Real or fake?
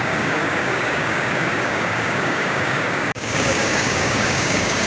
fake